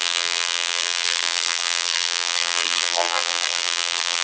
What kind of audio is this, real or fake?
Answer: fake